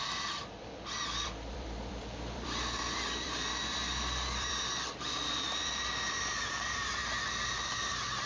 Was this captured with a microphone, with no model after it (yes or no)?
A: no